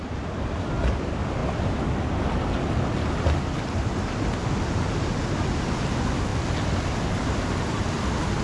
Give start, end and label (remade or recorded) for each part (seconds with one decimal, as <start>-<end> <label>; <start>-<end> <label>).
0.0-8.4 recorded